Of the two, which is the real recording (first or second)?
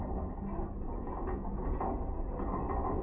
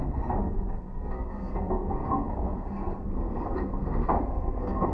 first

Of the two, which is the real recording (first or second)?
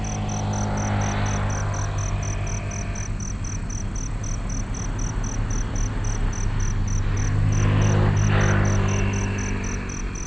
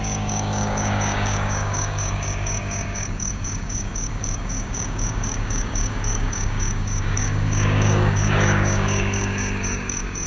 first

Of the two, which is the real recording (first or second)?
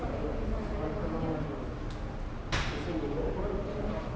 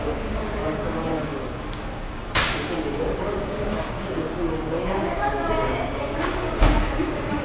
first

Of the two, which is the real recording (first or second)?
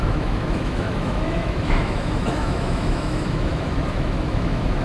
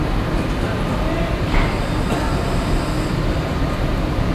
second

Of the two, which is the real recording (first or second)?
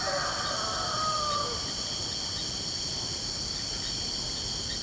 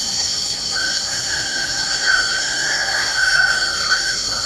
first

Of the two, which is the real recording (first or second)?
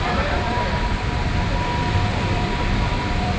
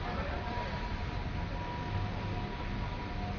second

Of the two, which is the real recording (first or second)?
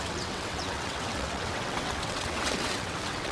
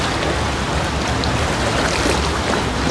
second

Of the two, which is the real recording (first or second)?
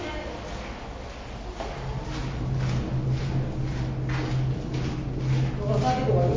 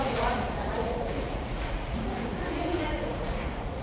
first